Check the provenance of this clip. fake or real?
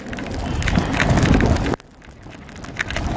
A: real